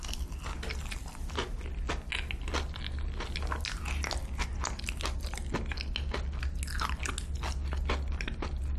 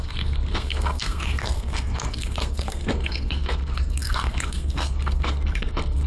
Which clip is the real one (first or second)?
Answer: first